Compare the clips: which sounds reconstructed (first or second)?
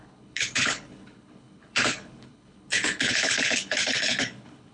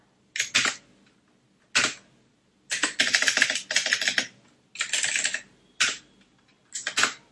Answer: first